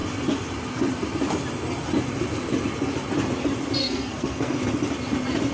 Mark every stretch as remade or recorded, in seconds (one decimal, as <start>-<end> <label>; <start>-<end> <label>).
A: 0.0-3.8 recorded; 3.8-4.6 remade; 4.6-5.5 recorded

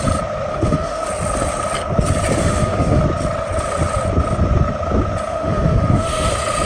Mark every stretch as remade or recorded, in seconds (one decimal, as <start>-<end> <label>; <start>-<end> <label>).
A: 0.0-0.5 recorded; 0.5-1.1 remade; 1.1-2.4 recorded; 2.4-3.0 remade; 3.0-5.3 recorded; 5.3-6.3 remade; 6.3-6.7 recorded